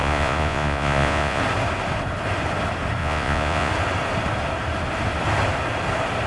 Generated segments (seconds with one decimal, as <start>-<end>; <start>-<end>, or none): 0.0-1.4; 3.0-3.7